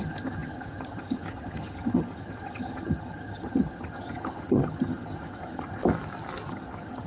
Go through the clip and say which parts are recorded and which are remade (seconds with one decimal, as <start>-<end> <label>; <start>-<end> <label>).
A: 0.0-5.8 remade; 5.8-6.5 recorded; 6.5-7.1 remade